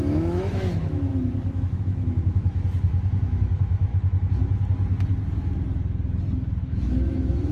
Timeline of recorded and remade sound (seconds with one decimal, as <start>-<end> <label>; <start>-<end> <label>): 0.0-3.9 remade; 3.9-6.6 recorded; 6.6-7.5 remade